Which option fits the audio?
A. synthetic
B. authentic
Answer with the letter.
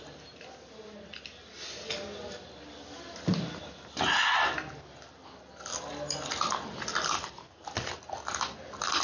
B